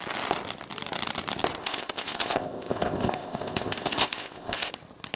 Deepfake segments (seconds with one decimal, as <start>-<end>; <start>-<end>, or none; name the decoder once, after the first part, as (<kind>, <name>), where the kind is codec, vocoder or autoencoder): 1.6-4.7 (codec, ZipCodec)